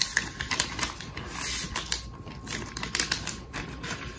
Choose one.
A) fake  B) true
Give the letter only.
B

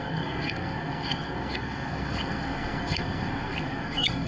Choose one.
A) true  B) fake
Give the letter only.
B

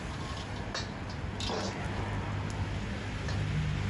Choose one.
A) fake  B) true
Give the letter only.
B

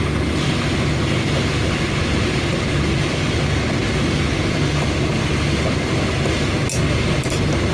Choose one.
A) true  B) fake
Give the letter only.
A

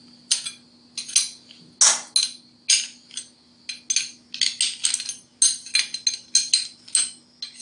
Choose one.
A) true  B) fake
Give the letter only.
A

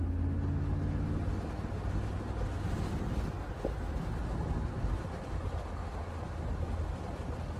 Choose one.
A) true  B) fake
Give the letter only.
A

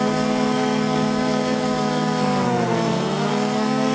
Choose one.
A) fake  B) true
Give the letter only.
A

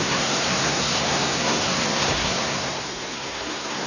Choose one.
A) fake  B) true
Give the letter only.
A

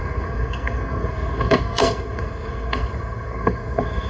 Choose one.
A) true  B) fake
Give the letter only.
B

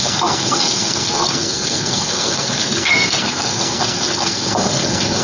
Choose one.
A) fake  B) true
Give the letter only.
A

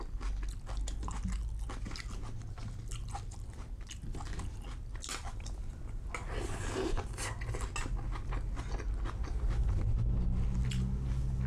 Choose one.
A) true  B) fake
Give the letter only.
A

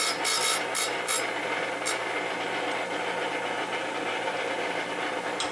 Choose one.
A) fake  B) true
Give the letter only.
B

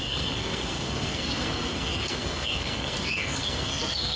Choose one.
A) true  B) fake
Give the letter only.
B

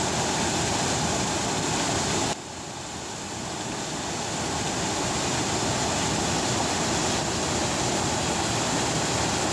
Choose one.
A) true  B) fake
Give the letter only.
A